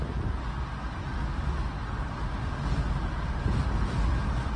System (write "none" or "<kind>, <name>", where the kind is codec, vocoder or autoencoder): none